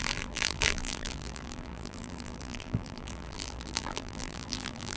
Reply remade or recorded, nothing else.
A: remade